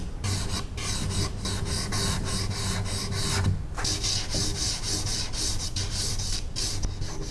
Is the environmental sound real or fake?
real